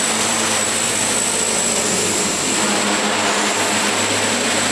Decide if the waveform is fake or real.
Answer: fake